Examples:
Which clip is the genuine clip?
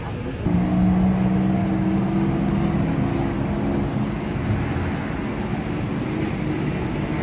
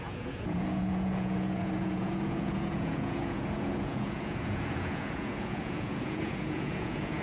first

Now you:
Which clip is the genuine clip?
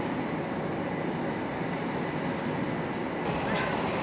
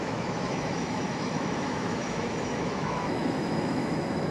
first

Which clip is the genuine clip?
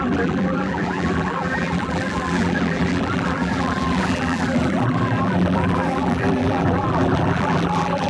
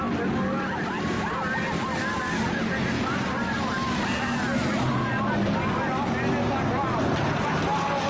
second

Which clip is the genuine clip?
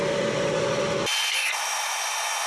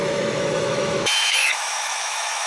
first